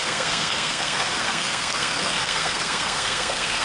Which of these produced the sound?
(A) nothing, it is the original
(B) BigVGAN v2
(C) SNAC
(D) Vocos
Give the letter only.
C